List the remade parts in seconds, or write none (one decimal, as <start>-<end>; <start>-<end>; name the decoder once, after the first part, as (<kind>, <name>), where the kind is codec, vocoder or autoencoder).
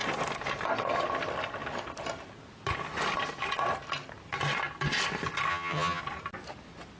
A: 5.5-6.0 (vocoder, HiFi-GAN)